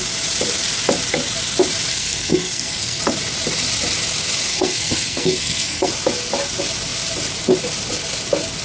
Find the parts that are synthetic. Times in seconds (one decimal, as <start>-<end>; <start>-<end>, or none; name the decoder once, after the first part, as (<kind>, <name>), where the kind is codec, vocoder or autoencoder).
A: 1.9-3.0 (codec, SNAC); 4.5-5.9

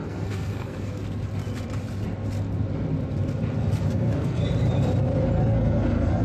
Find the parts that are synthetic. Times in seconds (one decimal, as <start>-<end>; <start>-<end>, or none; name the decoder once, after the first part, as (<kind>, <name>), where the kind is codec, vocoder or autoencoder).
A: 0.0-1.0 (codec, SNAC); 3.9-4.4; 5.4-6.2

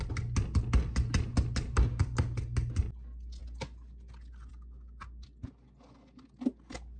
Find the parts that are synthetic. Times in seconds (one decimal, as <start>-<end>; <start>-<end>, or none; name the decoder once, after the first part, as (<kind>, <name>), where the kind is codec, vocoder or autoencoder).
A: none

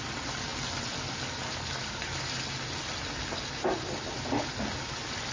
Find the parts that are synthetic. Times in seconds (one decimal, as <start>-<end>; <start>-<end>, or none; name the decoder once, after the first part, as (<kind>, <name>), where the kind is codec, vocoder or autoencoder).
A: none